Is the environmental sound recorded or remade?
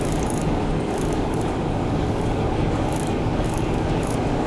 remade